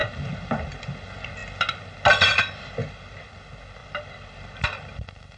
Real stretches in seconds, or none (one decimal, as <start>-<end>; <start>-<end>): 0.8-2.8; 3.3-3.8